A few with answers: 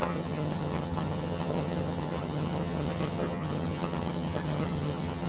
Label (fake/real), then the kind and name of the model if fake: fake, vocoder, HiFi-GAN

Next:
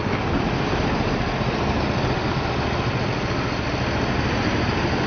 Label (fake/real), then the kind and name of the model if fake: real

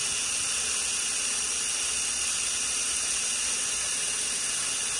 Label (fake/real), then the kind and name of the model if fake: real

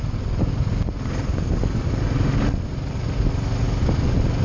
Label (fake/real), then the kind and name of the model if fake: real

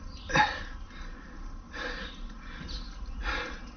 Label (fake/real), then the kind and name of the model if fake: real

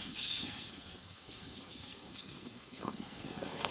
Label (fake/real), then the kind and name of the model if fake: fake, codec, SNAC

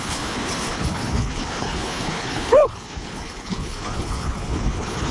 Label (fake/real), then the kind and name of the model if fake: fake, codec, HILCodec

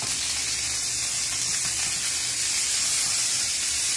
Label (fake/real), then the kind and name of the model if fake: real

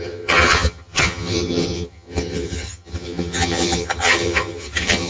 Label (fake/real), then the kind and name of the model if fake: fake, vocoder, HiFi-GAN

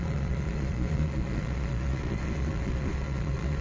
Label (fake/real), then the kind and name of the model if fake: fake, vocoder, Vocos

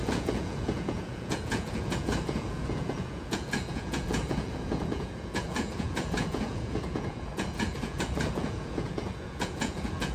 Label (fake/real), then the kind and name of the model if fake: fake, vocoder, Vocos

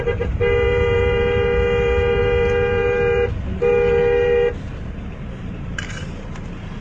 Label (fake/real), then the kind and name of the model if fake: fake, vocoder, BigVGAN v2